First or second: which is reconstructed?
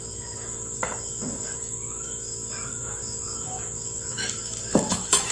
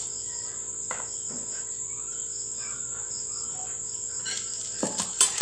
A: first